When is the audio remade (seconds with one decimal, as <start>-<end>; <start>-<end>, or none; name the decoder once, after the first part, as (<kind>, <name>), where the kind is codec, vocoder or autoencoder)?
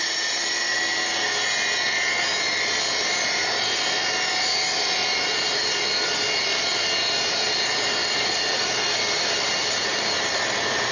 8.0-8.6 (vocoder, Vocos)